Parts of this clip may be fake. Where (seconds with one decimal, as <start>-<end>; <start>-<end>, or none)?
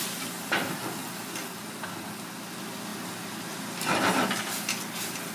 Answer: none